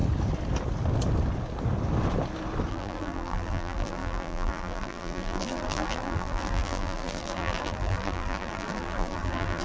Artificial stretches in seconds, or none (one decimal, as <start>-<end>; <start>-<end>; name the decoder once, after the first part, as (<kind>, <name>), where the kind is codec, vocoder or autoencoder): 2.7-9.6 (vocoder, BigVGAN v2)